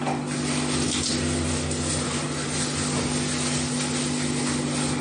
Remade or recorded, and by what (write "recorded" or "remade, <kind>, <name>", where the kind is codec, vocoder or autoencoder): recorded